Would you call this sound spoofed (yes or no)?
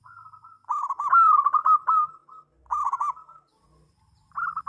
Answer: no